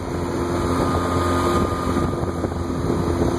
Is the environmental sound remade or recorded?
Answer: recorded